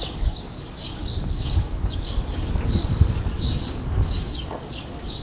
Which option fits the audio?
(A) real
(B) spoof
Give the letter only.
B